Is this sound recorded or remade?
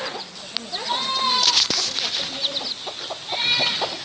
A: recorded